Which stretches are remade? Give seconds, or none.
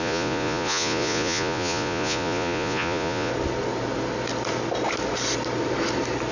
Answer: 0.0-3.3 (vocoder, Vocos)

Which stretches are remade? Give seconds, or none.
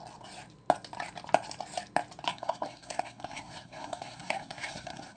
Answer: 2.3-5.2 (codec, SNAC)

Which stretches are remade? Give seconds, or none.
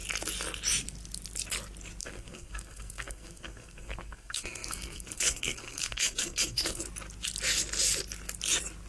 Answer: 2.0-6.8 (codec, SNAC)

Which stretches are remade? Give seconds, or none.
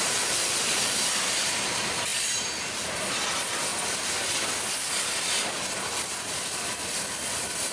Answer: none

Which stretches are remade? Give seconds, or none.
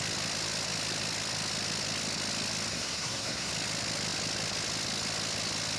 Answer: 2.7-3.5 (codec, SNAC)